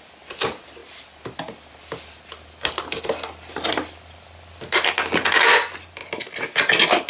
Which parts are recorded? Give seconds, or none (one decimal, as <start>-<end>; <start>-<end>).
0.0-7.1